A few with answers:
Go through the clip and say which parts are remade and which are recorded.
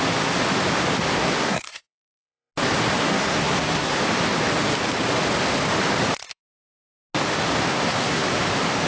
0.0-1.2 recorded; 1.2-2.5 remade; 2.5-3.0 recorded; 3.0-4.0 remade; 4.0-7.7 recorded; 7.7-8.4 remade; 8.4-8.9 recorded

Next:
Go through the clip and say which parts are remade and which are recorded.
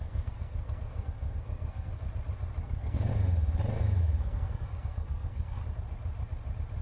0.0-1.9 remade; 1.9-2.6 recorded; 2.6-3.1 remade; 3.1-4.0 recorded; 4.0-5.6 remade; 5.6-6.8 recorded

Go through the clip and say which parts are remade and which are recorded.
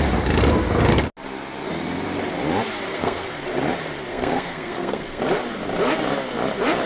0.0-2.9 recorded; 2.9-3.4 remade; 3.4-4.1 recorded; 4.1-5.2 remade; 5.2-6.9 recorded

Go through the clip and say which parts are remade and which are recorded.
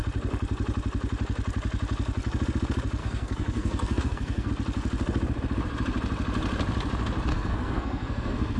0.0-3.0 recorded; 3.0-4.5 remade; 4.5-7.3 recorded; 7.3-8.6 remade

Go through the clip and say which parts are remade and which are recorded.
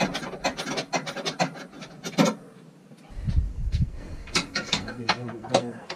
0.0-3.5 recorded; 3.5-6.0 remade